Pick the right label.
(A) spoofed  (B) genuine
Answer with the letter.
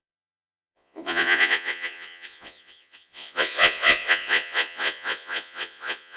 A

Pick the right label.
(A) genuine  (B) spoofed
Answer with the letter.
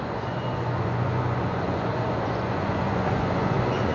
B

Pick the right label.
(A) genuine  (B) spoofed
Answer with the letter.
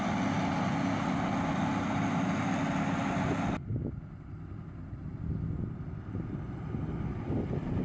A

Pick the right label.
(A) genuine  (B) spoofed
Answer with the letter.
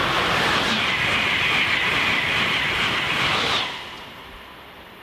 A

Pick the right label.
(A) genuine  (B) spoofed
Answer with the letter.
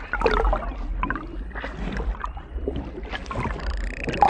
A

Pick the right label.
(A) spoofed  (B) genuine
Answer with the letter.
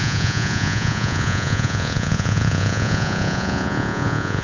A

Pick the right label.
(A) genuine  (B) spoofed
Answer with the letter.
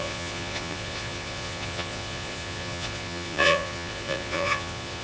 B